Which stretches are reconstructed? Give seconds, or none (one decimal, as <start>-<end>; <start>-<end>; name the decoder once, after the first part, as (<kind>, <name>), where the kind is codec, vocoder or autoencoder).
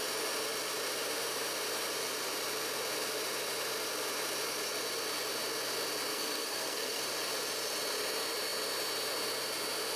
6.1-7.0 (codec, SNAC)